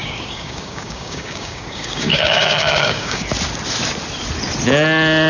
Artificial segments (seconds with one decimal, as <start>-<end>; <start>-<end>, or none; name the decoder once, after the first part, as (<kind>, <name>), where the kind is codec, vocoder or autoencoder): 0.0-3.2 (codec, DAC)